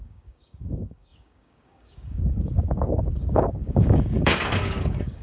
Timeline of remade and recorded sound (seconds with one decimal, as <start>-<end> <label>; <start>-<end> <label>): 0.0-5.2 remade